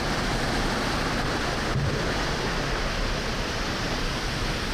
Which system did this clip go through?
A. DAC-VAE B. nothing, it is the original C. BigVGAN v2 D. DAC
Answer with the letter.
B